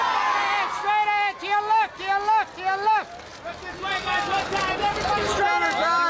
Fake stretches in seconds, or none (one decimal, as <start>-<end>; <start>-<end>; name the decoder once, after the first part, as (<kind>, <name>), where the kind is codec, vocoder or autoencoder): none